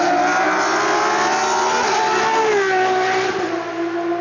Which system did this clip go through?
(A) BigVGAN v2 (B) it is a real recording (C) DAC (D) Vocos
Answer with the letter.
B